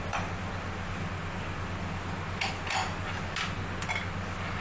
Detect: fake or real real